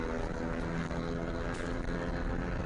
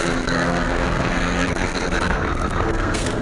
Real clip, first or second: first